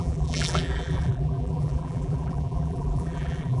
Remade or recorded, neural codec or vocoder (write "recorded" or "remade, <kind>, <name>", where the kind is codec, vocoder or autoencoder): remade, vocoder, BigVGAN v2